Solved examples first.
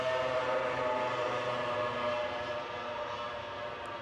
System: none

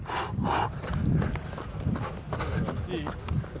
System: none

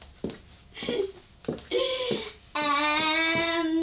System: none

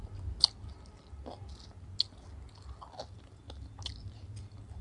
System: none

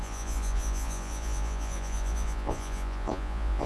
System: vocoder, Vocos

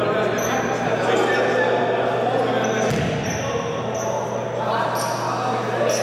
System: none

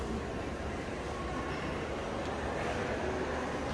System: none